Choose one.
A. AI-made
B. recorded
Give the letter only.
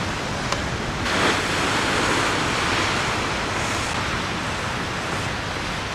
B